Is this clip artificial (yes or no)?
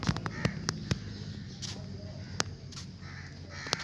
no